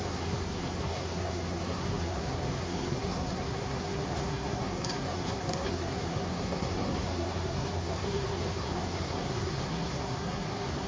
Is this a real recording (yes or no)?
no